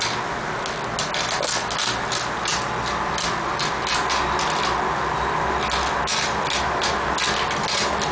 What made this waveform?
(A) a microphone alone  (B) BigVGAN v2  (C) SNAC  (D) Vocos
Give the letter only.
A